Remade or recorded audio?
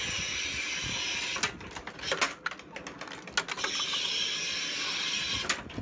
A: recorded